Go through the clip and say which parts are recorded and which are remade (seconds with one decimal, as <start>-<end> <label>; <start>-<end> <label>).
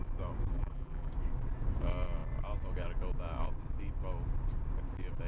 0.0-0.5 recorded; 0.5-1.1 remade; 1.1-5.3 recorded